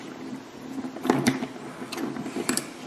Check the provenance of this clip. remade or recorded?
recorded